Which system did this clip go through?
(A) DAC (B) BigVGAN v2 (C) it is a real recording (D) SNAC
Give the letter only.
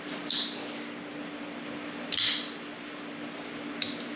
C